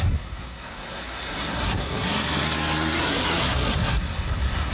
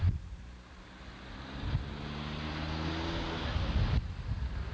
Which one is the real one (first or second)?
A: second